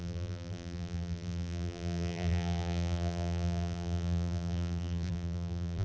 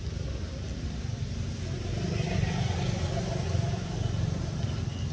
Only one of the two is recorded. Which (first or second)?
second